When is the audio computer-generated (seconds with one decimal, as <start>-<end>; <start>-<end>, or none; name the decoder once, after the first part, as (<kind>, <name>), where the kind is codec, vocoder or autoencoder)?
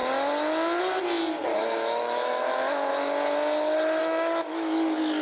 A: 1.6-2.9 (autoencoder, DAC-VAE); 4.0-5.2